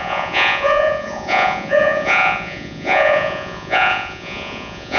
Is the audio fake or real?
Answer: fake